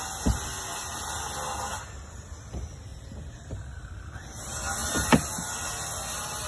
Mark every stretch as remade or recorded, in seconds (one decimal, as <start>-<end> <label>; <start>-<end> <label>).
0.0-2.9 recorded; 2.9-3.9 remade; 3.9-4.8 recorded; 4.8-5.7 remade; 5.7-6.5 recorded